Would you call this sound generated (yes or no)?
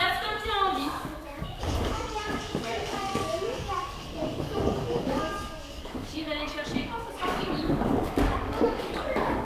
yes